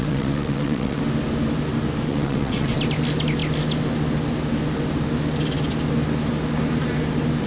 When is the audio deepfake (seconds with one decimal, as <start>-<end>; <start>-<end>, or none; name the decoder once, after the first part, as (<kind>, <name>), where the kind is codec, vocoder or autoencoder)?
0.0-1.0 (vocoder, WaveNeXt); 2.1-2.8